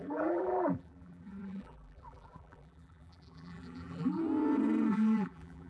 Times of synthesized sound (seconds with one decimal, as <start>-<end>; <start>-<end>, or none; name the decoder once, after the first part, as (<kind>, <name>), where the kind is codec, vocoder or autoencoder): 0.0-4.2 (vocoder, BigVGAN v2); 4.9-5.7